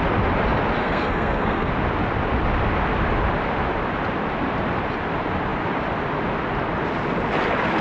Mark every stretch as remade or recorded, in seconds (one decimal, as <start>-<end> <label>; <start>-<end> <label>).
0.0-0.8 recorded; 0.8-1.7 remade; 1.7-7.8 recorded